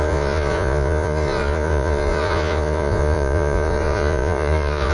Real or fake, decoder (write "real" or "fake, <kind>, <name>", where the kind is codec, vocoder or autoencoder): fake, vocoder, Vocos